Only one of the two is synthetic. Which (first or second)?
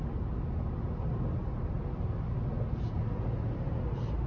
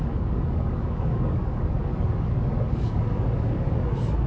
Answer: second